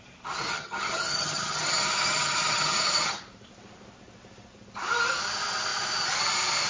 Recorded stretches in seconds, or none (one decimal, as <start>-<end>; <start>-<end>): 0.0-0.5; 3.2-6.7